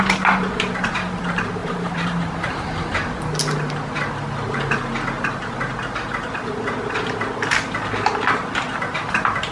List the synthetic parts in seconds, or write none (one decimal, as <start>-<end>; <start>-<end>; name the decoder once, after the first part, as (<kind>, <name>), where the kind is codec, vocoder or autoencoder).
1.6-2.7 (vocoder, BigVGAN v2)